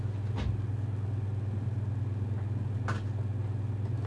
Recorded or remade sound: recorded